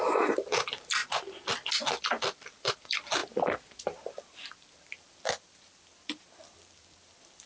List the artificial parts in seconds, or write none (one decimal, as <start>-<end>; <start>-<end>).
0.0-1.0; 2.0-3.2; 3.8-7.5